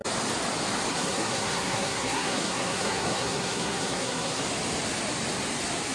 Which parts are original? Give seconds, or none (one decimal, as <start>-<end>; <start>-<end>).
0.0-0.9; 4.4-5.9